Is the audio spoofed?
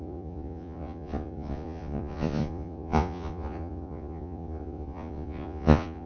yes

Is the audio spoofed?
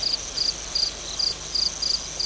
no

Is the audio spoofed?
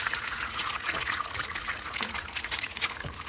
yes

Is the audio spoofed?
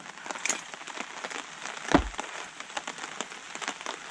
no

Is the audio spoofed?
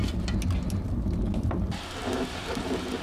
no